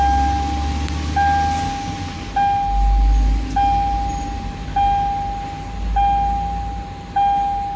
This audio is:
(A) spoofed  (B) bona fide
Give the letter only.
B